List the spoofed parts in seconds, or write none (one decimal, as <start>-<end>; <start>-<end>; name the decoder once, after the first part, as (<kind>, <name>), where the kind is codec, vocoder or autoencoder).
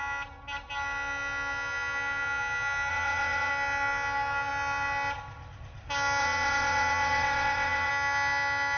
2.9-3.5 (vocoder, WaveNeXt); 6.2-7.9